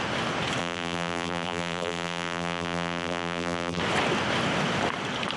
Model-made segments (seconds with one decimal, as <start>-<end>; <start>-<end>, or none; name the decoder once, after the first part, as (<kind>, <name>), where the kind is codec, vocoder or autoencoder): 0.6-3.8 (vocoder, BigVGAN v2)